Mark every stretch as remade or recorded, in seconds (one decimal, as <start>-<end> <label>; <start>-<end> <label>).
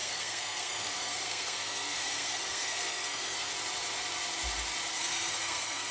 0.0-3.5 remade; 3.5-4.9 recorded; 4.9-5.9 remade